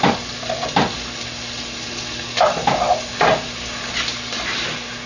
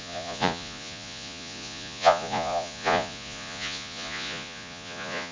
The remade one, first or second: second